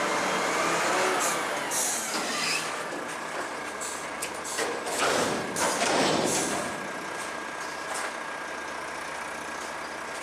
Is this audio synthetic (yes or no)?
no